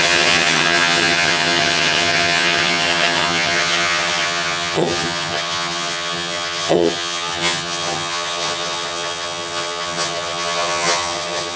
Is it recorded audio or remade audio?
remade